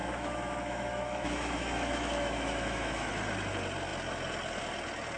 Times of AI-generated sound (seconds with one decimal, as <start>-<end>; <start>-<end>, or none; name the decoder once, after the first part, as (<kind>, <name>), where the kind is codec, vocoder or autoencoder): 0.0-3.1 (autoencoder, DAC-VAE)